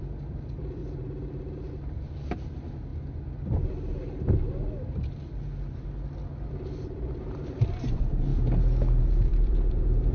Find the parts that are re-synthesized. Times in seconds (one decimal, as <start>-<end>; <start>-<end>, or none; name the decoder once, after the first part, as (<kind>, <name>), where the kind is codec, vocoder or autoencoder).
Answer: 0.0-0.8 (vocoder, BigVGAN v2); 1.7-2.9; 6.4-8.3; 9.0-10.1